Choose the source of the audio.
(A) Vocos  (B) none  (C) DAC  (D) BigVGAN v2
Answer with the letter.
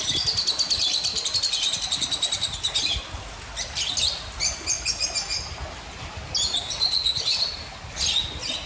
B